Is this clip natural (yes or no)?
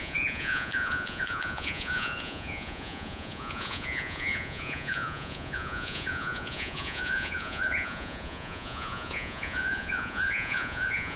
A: no